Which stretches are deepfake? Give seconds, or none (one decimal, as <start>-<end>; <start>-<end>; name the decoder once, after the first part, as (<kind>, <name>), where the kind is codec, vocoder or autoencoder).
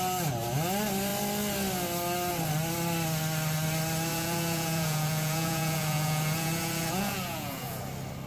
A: 4.1-7.8 (vocoder, Vocos)